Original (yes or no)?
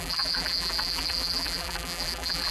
no